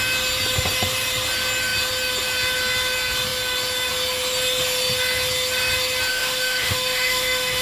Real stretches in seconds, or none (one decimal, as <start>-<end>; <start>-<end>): 0.0-6.1